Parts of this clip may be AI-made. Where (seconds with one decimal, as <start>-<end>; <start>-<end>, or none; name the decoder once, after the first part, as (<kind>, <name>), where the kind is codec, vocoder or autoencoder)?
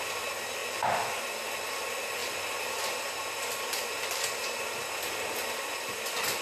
none